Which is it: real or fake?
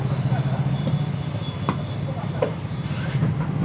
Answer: real